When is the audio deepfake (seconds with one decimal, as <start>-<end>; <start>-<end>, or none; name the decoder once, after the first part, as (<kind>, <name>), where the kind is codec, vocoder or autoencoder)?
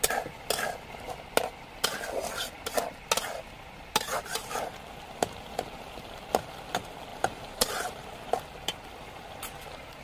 7.1-8.4 (vocoder, BigVGAN v2)